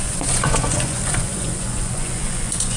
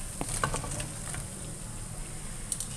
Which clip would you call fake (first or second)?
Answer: first